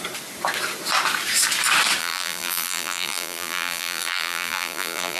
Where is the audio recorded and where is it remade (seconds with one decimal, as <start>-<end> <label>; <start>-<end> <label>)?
0.0-2.0 recorded; 2.0-5.2 remade